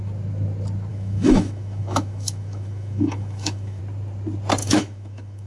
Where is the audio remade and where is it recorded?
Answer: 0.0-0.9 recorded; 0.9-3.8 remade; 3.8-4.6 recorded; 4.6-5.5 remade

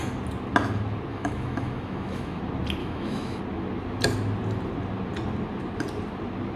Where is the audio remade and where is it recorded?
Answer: 0.0-1.1 recorded; 1.1-2.4 remade; 2.4-2.8 recorded; 2.8-3.4 remade; 3.4-6.6 recorded

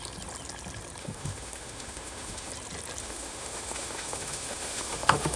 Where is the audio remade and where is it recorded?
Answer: 0.0-1.0 recorded; 1.0-2.5 remade; 2.5-3.0 recorded; 3.0-5.4 remade

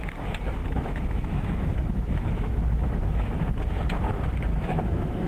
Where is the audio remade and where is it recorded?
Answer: 0.0-0.6 recorded; 0.6-3.5 remade; 3.5-4.5 recorded; 4.5-5.3 remade

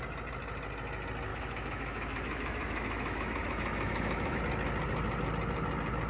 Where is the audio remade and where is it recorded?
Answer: 0.0-1.3 recorded; 1.3-4.4 remade; 4.4-6.1 recorded

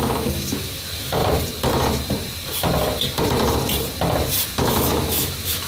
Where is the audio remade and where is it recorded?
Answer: 0.0-1.2 remade; 1.2-4.5 recorded; 4.5-5.7 remade

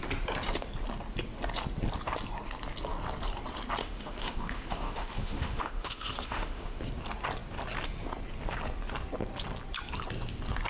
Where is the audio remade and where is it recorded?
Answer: 0.0-3.8 recorded; 3.8-6.8 remade; 6.8-10.7 recorded

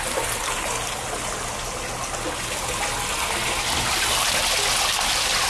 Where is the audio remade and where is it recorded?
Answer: 0.0-5.5 recorded